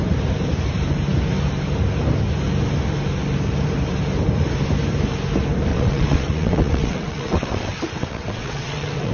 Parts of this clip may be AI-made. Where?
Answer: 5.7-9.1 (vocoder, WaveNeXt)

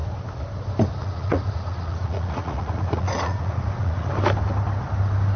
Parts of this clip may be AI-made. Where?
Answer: 1.0-4.1 (vocoder, Vocos)